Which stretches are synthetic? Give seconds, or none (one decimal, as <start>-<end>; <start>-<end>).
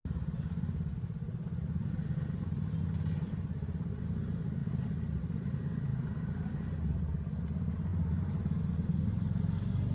5.9-6.5; 7.9-8.6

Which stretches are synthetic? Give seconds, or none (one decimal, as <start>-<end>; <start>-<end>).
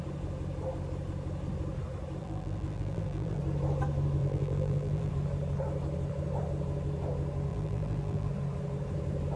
2.2-3.4; 4.2-5.1; 7.5-8.3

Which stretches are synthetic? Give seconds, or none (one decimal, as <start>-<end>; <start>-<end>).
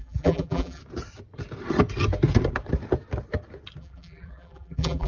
0.0-0.8; 3.8-5.1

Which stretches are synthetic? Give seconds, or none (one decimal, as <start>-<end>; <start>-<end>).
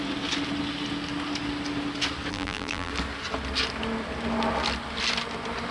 2.3-2.9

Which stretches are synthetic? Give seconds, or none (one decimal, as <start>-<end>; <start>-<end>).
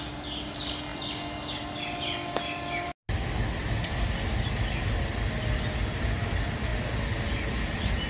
none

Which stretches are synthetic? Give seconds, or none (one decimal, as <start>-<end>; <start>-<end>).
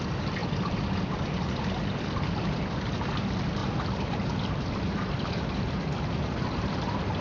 none